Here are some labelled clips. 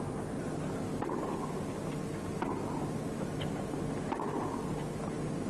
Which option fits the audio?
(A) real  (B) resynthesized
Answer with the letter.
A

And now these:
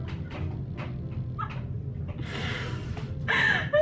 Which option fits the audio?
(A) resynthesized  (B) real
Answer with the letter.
A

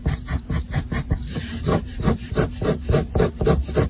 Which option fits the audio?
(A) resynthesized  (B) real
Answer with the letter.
A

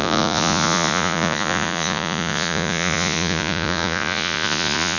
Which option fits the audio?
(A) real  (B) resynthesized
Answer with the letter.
B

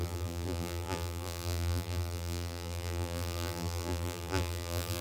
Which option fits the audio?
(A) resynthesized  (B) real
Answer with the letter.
A